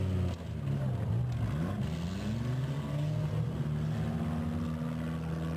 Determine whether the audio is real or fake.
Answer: real